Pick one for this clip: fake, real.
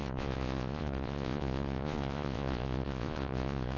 fake